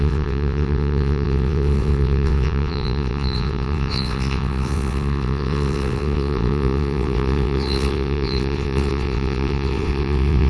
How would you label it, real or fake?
fake